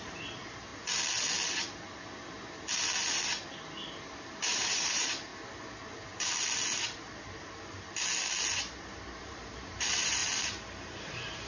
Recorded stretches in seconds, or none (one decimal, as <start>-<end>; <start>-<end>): 0.7-4.0; 5.3-9.2; 10.2-11.0